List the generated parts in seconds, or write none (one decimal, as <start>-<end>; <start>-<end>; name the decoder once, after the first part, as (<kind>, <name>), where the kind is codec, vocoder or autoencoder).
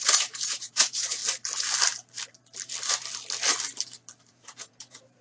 0.0-1.2 (vocoder, Vocos); 4.3-5.2